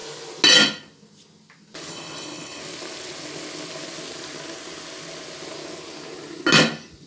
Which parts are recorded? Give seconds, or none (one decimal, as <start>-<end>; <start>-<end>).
0.0-1.9; 2.6-7.1